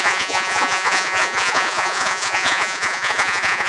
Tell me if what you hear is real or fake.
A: fake